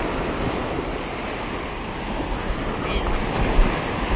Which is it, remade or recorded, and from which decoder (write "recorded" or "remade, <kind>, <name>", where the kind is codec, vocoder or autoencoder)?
recorded